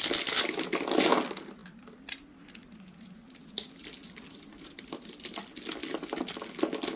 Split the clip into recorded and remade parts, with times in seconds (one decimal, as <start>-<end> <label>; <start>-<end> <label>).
0.0-7.0 recorded